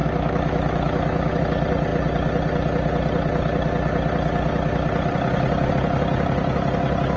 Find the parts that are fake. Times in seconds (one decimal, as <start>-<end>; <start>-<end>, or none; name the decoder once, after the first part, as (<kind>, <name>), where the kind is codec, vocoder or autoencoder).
0.0-1.4 (autoencoder, DAC-VAE)